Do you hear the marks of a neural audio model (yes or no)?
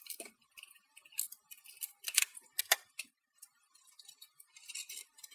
yes